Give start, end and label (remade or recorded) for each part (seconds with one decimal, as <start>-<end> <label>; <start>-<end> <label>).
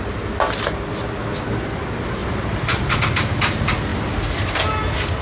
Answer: 0.0-2.2 recorded; 2.2-2.9 remade; 2.9-3.9 recorded; 3.9-4.7 remade; 4.7-5.2 recorded